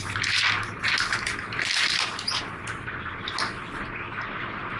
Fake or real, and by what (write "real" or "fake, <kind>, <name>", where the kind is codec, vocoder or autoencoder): real